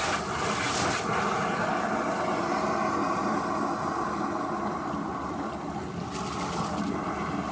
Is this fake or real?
real